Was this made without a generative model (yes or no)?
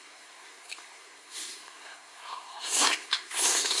no